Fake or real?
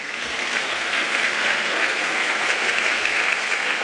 fake